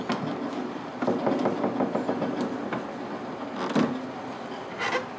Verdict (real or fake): real